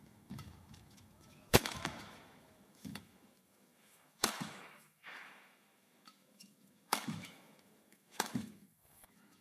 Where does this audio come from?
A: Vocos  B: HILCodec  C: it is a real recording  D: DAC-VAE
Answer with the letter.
D